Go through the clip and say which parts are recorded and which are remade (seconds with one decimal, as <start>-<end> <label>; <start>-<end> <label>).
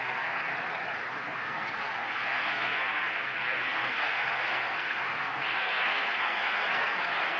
0.0-0.5 remade; 0.5-1.1 recorded; 1.1-7.4 remade